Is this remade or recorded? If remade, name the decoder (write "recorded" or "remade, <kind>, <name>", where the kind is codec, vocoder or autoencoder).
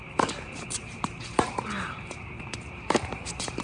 remade, vocoder, BigVGAN v2